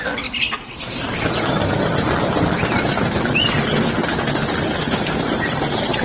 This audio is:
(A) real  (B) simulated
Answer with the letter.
A